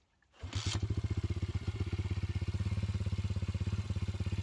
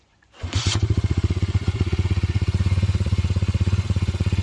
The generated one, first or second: second